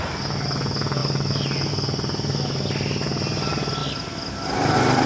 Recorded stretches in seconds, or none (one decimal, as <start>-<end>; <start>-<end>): 0.0-5.1